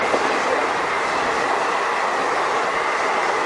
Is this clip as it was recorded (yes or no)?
yes